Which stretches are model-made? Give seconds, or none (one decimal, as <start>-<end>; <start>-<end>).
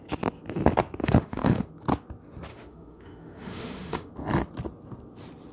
1.0-1.7; 2.5-4.1